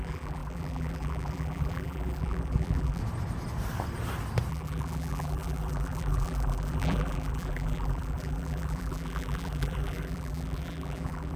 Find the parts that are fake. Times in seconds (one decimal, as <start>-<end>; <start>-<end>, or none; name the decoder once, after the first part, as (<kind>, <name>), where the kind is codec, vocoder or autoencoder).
0.0-3.0 (vocoder, BigVGAN v2); 4.5-11.4